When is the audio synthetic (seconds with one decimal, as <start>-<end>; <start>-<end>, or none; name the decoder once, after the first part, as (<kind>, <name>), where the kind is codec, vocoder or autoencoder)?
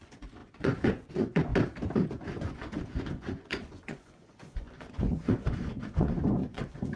0.0-1.5 (vocoder, Vocos); 2.1-7.0